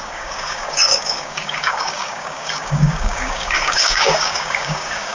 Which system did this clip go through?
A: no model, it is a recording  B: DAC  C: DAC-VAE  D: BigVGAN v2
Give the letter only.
B